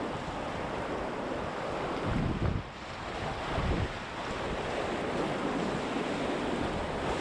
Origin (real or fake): real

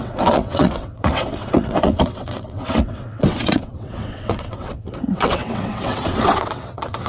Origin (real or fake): fake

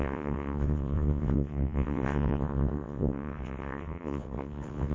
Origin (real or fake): fake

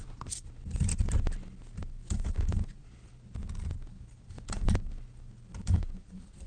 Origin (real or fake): real